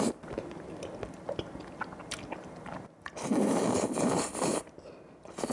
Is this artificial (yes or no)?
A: yes